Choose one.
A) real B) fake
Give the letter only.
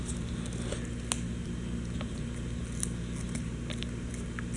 A